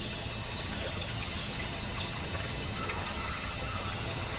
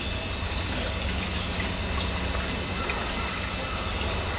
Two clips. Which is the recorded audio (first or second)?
second